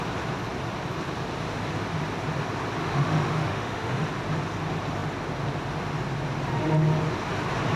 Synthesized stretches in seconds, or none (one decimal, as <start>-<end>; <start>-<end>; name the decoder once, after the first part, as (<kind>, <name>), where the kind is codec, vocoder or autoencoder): 2.8-4.1 (autoencoder, DAC-VAE)

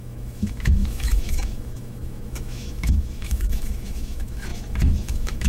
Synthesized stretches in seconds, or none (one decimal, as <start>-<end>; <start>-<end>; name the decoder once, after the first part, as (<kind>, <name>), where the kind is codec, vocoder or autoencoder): 0.0-5.5 (autoencoder, DAC-VAE)

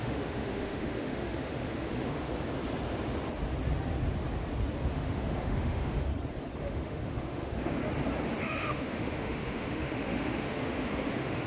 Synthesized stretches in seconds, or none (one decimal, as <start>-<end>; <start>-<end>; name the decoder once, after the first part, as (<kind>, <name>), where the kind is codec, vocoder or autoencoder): 0.0-2.3 (autoencoder, DAC-VAE); 4.9-6.1; 6.6-7.8; 8.4-11.5

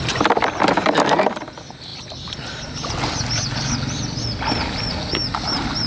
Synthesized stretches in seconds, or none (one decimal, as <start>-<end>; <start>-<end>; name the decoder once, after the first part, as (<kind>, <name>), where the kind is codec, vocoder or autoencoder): none